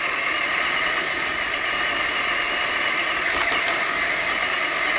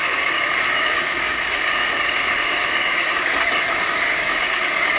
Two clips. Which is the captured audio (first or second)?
first